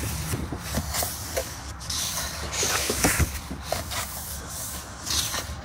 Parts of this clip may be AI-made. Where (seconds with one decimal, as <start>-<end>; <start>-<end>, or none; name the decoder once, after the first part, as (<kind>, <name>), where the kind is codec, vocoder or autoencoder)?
1.4-4.8 (codec, DAC)